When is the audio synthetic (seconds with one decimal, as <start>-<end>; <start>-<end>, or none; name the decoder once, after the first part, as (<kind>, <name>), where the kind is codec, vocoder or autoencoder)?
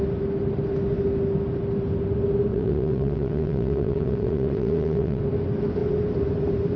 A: 2.5-5.2 (vocoder, WaveNeXt)